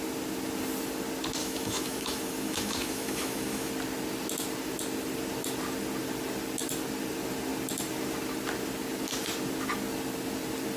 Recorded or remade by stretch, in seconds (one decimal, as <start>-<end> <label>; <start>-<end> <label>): 0.0-1.4 recorded; 1.4-3.7 remade; 3.7-10.8 recorded

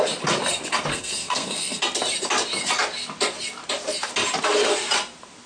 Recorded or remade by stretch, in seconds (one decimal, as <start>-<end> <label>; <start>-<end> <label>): 0.0-0.9 recorded; 0.9-1.8 remade; 1.8-5.5 recorded